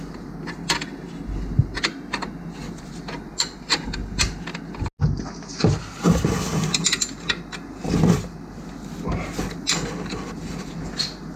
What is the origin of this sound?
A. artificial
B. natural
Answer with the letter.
B